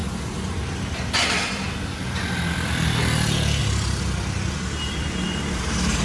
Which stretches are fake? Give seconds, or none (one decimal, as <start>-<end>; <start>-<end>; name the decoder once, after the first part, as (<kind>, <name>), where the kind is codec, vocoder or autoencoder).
none